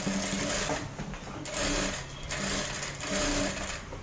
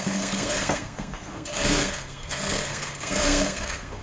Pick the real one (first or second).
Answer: first